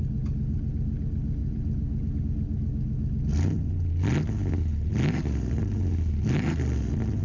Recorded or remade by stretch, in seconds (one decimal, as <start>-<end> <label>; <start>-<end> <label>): 0.0-7.2 recorded